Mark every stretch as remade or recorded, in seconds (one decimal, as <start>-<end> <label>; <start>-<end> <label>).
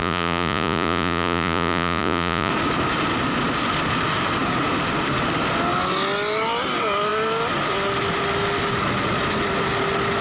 0.0-2.5 remade; 2.5-10.2 recorded